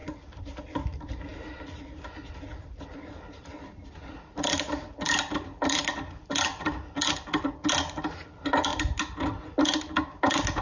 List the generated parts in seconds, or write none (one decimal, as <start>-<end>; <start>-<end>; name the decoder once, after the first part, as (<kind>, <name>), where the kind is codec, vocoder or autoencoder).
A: none